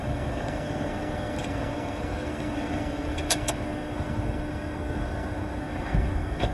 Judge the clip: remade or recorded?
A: remade